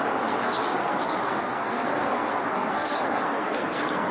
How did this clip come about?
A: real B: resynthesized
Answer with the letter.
B